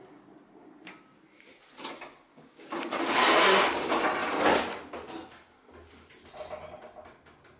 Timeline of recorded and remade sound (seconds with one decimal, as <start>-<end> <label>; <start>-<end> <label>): 0.0-2.3 recorded; 2.3-2.8 remade; 2.8-7.6 recorded